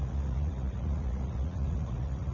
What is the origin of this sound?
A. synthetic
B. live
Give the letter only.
A